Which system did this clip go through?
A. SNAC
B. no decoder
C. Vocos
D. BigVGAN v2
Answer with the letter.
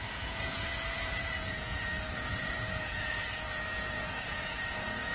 C